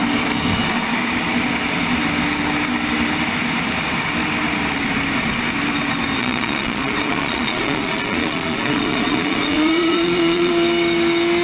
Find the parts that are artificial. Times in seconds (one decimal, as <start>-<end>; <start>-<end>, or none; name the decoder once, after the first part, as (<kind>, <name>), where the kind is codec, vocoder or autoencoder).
6.2-10.5 (vocoder, Vocos)